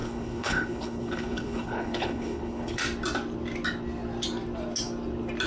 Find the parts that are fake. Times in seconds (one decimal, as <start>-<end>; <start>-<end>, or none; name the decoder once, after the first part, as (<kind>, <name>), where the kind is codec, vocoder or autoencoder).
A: 0.0-2.8 (codec, HILCodec)